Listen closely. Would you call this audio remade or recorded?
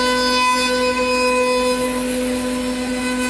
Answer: recorded